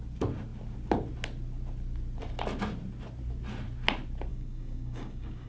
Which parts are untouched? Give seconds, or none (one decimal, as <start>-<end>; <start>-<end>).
0.0-4.3